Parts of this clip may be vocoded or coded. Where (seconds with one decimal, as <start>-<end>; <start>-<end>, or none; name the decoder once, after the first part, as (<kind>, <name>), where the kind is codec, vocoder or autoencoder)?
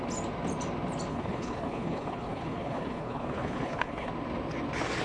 1.1-4.1 (codec, HILCodec)